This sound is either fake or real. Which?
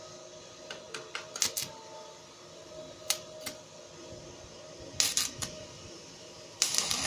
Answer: real